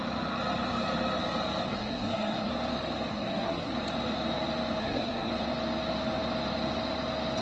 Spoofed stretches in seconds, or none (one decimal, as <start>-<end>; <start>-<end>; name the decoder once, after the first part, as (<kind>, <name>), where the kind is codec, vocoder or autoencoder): 1.7-2.5 (codec, SNAC); 3.1-3.7; 4.8-5.3